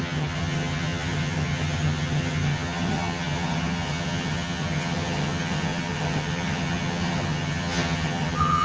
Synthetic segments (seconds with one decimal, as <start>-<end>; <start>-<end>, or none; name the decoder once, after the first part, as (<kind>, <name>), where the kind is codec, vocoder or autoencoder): 0.0-8.6 (vocoder, HiFi-GAN)